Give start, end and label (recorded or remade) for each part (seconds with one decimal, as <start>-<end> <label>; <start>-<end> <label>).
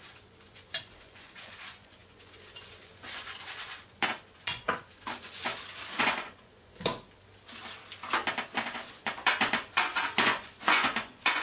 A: 0.0-5.5 remade; 5.5-6.0 recorded; 6.0-6.9 remade; 6.9-8.6 recorded; 8.6-11.4 remade